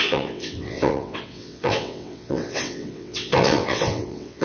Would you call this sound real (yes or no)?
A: no